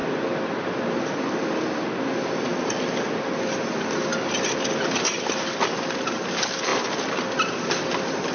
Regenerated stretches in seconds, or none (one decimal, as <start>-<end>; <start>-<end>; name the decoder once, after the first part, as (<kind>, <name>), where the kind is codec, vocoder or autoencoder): none